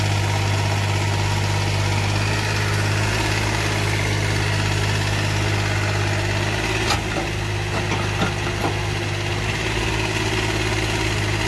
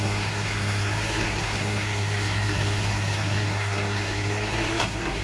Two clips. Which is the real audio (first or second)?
first